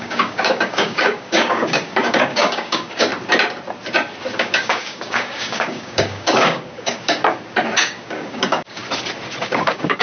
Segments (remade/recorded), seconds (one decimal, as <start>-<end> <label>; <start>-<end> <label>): 0.0-3.1 remade; 3.1-4.3 recorded; 4.3-7.2 remade; 7.2-7.8 recorded; 7.8-8.8 remade; 8.8-9.4 recorded; 9.4-10.0 remade